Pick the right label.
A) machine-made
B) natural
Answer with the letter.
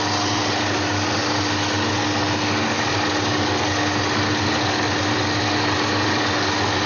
B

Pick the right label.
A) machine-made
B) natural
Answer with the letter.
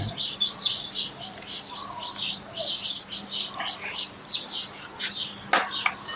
B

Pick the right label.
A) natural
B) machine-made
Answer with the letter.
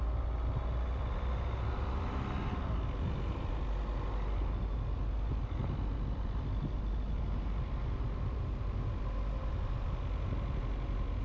A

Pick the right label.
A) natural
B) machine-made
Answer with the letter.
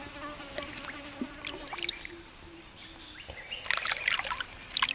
A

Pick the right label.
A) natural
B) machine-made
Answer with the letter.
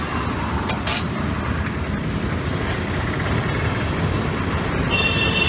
B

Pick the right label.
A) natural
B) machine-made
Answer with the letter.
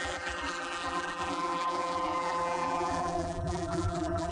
B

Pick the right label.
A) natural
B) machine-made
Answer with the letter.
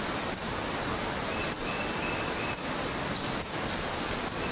A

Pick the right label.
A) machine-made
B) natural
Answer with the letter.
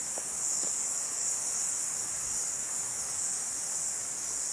A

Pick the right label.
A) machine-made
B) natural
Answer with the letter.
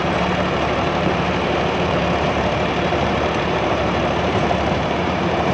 A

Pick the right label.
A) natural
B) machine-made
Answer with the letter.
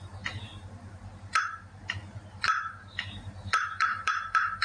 B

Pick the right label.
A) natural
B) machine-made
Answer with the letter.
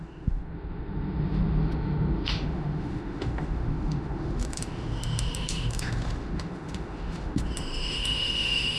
B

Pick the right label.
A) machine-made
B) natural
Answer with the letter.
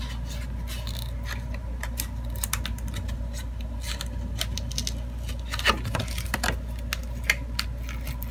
B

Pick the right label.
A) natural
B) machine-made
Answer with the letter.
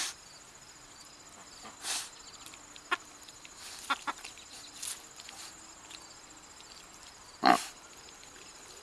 A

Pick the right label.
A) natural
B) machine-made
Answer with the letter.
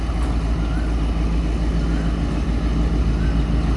A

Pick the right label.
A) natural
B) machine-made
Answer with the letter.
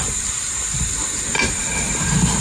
A